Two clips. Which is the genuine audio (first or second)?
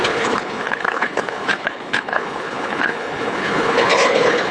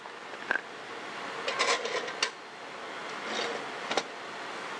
second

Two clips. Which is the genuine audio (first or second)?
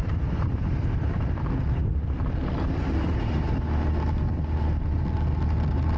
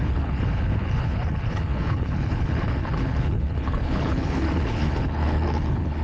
first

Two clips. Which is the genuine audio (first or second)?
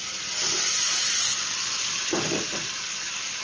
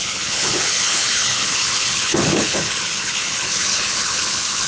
first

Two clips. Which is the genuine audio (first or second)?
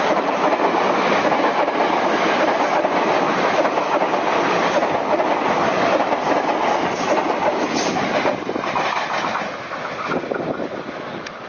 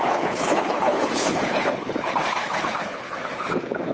first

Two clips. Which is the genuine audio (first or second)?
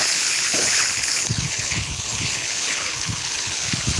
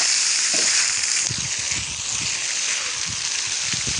second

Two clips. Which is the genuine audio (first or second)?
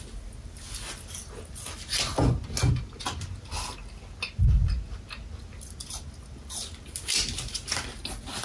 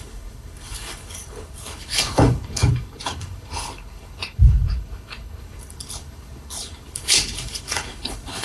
first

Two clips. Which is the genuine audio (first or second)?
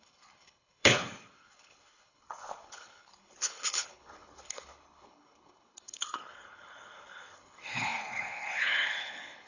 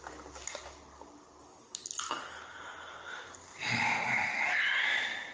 second